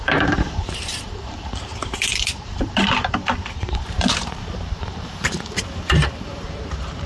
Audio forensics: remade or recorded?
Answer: remade